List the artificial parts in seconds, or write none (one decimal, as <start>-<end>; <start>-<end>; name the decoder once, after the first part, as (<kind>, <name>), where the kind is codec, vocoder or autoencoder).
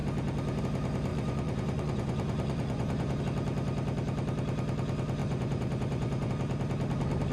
1.1-3.2 (vocoder, Vocos); 5.2-6.3